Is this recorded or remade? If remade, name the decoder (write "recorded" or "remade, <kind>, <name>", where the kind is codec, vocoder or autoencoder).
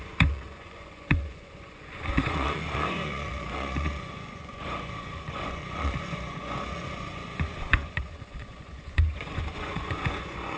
remade, vocoder, Vocos